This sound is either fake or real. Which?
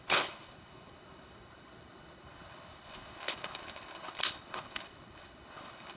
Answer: fake